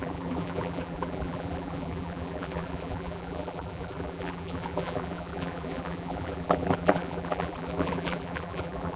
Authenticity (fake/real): fake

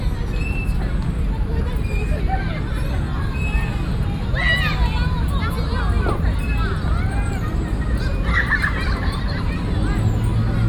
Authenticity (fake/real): real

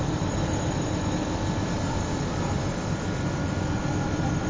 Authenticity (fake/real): real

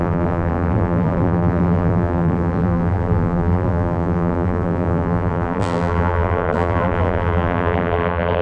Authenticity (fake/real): fake